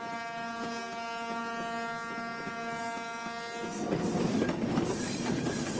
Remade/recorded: recorded